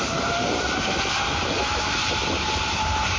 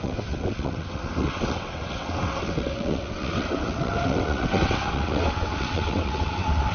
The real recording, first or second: first